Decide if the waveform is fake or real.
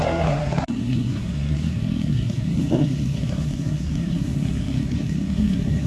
fake